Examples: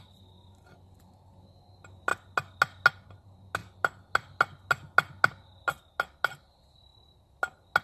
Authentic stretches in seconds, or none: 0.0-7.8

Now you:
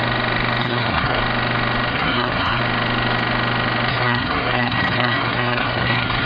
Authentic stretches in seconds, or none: 0.0-0.6; 1.2-1.9; 2.6-3.9

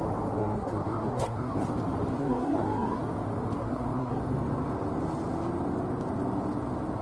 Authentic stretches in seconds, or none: 0.0-0.4; 1.7-2.1; 3.0-3.6; 4.2-7.0

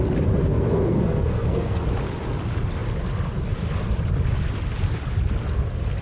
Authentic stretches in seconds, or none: 0.0-0.4; 1.8-6.0

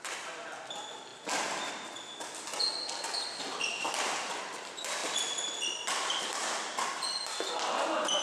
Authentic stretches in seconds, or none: 0.0-8.2

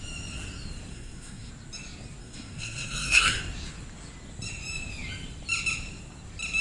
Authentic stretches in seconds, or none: 0.0-0.9; 1.5-2.2; 3.4-6.6

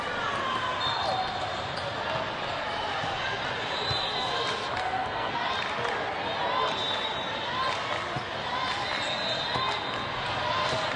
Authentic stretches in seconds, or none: 0.0-4.8; 5.4-11.0